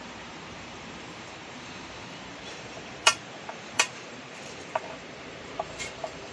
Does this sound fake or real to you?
fake